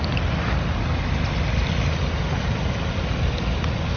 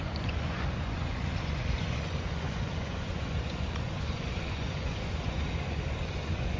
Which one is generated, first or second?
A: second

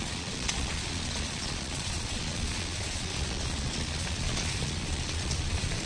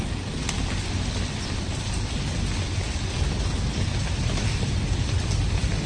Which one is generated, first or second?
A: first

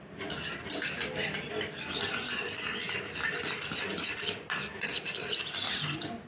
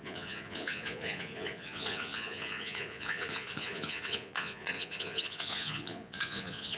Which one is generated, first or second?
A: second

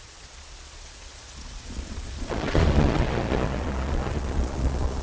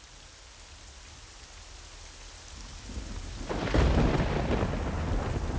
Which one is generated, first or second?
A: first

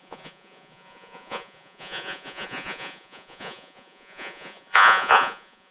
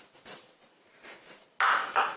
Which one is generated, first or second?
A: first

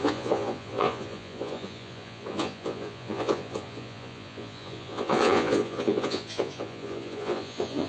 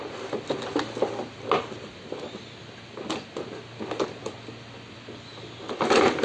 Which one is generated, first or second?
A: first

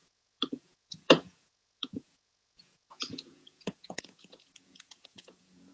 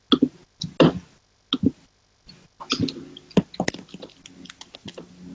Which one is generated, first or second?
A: first